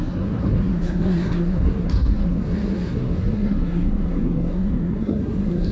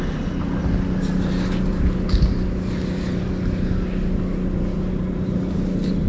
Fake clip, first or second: first